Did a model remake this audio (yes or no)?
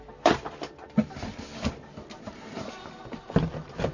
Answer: no